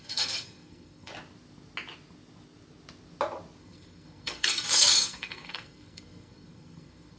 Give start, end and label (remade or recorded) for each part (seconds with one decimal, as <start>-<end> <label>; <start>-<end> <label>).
0.0-1.1 remade; 1.1-3.6 recorded; 3.6-7.2 remade